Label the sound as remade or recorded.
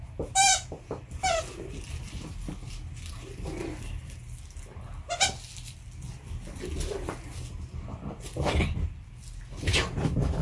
recorded